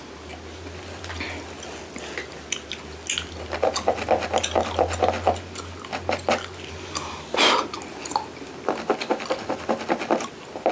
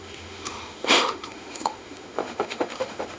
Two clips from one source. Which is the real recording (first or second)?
first